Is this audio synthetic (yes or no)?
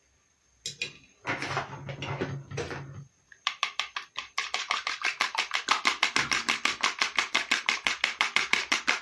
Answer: no